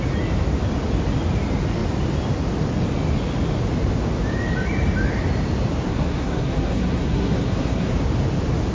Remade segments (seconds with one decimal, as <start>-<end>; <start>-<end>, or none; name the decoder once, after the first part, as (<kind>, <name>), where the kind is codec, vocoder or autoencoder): 5.9-7.9 (codec, SNAC)

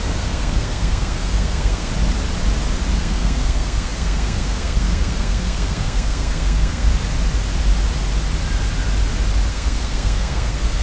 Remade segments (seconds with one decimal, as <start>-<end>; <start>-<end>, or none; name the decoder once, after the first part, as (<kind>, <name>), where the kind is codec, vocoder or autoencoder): 0.0-1.9 (codec, SNAC); 3.0-6.9; 9.5-10.8